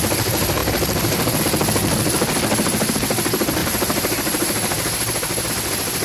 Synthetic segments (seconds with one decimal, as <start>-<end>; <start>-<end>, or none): 3.6-5.5